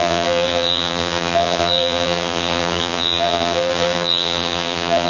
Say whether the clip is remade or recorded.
remade